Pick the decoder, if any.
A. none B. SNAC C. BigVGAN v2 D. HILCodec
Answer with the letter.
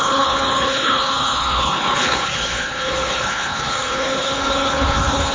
D